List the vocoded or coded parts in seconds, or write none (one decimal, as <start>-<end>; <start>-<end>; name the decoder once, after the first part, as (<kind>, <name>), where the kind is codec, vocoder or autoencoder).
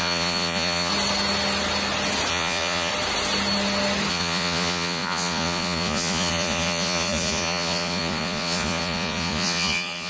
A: 0.0-0.9 (vocoder, Vocos); 2.3-2.9; 4.1-10.1